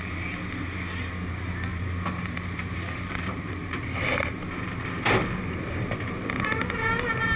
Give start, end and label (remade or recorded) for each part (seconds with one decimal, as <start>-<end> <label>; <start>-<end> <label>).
0.0-1.7 recorded; 1.7-3.9 remade; 3.9-7.4 recorded